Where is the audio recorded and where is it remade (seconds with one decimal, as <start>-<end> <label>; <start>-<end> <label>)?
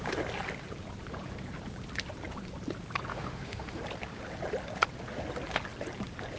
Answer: 0.0-3.1 recorded; 3.1-3.8 remade; 3.8-6.4 recorded